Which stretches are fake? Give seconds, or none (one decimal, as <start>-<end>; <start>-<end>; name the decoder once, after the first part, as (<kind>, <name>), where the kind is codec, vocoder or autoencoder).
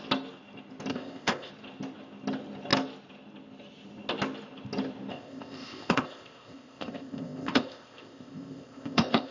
0.9-1.5 (codec, ZipCodec); 5.1-9.3